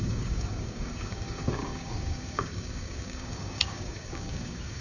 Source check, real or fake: fake